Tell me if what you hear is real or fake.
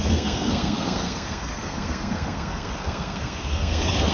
fake